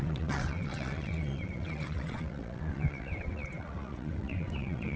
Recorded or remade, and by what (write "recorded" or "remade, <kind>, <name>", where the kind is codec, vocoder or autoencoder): remade, vocoder, WaveNeXt